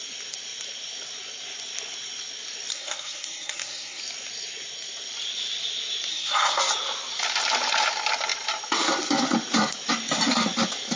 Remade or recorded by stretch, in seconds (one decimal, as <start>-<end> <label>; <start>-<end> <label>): 0.0-2.7 recorded; 2.7-4.0 remade; 4.0-6.1 recorded; 6.1-6.6 remade; 6.6-11.0 recorded